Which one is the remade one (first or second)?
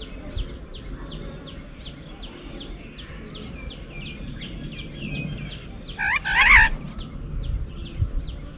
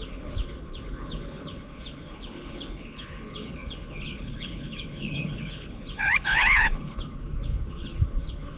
second